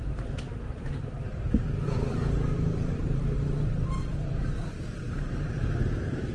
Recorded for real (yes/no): no